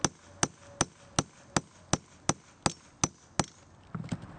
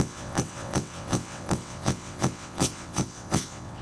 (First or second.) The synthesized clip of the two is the second